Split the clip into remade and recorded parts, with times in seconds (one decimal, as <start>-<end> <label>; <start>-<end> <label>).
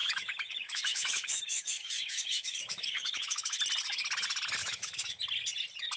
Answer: 0.0-3.6 remade; 3.6-4.6 recorded; 4.6-5.2 remade; 5.2-6.0 recorded